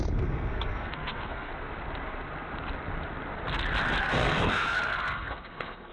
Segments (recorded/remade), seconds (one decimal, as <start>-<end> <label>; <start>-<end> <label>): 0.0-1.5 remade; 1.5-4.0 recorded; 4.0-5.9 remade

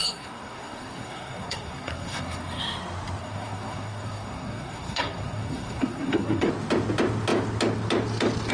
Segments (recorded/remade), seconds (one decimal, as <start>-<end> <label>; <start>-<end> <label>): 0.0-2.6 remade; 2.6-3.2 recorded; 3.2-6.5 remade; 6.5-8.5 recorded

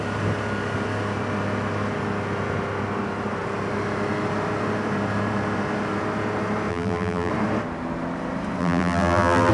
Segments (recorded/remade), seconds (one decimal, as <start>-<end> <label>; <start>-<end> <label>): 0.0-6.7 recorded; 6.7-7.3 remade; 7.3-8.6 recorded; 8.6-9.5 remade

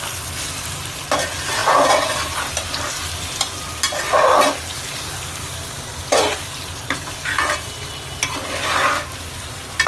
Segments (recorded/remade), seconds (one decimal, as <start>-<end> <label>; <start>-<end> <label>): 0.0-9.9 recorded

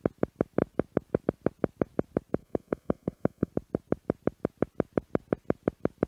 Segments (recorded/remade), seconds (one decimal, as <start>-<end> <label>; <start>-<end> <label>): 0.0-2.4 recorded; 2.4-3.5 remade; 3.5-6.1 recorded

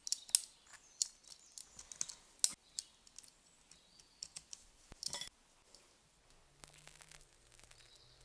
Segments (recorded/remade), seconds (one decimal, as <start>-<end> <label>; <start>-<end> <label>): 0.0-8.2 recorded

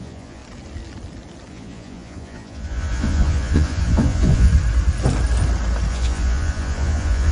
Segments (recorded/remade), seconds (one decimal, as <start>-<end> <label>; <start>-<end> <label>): 0.0-0.4 remade; 0.4-1.5 recorded; 1.5-4.5 remade; 4.5-5.9 recorded; 5.9-7.3 remade

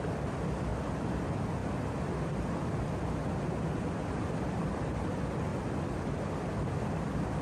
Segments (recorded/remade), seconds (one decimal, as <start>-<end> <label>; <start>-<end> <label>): 0.0-7.4 recorded